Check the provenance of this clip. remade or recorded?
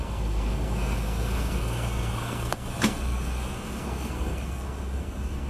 remade